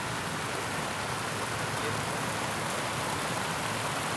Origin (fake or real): real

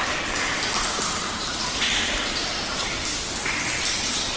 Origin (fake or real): real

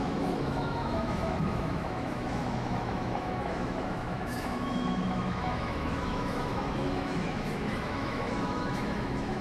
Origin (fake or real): fake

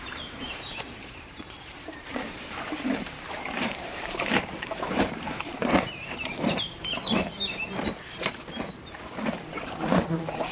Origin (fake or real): fake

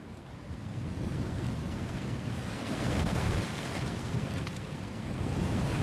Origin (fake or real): fake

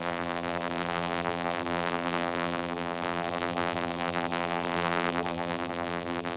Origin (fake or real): fake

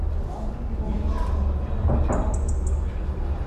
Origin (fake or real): real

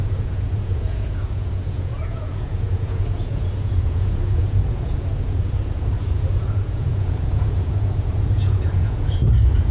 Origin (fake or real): fake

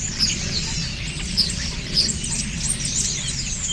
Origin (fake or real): real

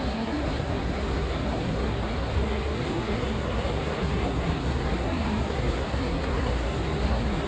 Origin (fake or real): fake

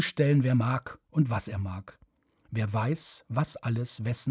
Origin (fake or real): real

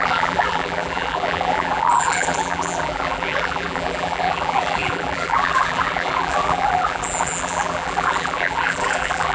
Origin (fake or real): fake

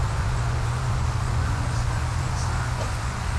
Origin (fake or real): fake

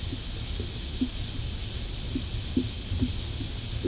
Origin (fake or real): real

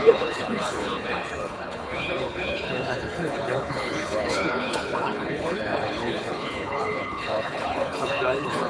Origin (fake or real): fake